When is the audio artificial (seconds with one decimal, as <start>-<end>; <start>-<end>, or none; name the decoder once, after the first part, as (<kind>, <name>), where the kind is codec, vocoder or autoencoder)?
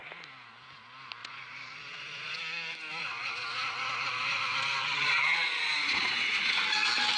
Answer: 1.2-2.4 (vocoder, Vocos); 3.0-6.6